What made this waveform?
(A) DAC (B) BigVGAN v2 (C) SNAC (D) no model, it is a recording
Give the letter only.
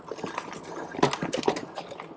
D